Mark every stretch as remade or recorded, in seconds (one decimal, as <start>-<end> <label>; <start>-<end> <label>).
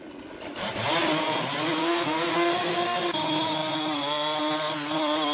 0.0-1.8 recorded; 1.8-2.3 remade; 2.3-5.3 recorded